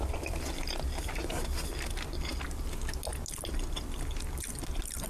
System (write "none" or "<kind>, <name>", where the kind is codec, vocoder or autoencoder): none